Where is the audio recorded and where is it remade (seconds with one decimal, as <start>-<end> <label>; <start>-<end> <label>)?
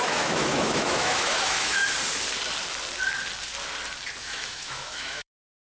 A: 0.0-1.8 remade; 1.8-4.2 recorded; 4.2-5.7 remade